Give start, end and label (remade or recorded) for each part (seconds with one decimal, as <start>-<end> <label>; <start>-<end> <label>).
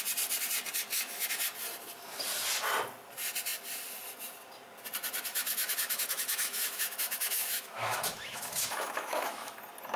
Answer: 0.0-0.9 recorded; 0.9-1.4 remade; 1.4-5.3 recorded; 5.3-9.6 remade; 9.6-10.0 recorded